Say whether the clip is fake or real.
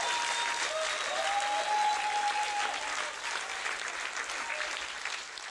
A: real